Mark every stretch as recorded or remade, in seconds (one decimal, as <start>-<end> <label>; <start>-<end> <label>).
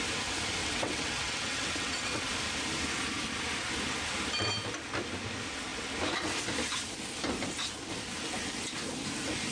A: 0.0-0.6 recorded; 0.6-2.3 remade; 2.3-9.5 recorded